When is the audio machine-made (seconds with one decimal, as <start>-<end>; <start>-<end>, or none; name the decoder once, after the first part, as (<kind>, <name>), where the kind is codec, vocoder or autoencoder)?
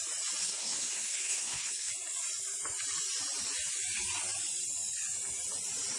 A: 0.4-1.9 (codec, SNAC)